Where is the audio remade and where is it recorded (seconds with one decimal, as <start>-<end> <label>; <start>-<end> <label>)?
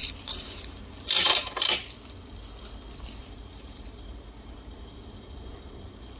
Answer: 0.0-1.8 remade; 1.8-3.2 recorded; 3.2-6.2 remade